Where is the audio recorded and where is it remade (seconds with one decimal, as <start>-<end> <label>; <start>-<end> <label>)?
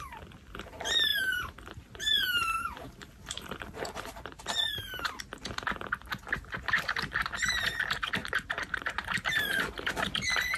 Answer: 0.0-1.1 recorded; 1.1-4.4 remade; 4.4-8.2 recorded; 8.2-9.6 remade; 9.6-10.6 recorded